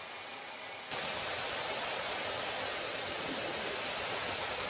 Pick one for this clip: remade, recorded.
recorded